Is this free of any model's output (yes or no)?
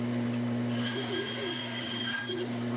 yes